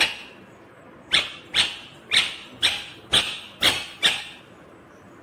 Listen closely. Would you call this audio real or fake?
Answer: real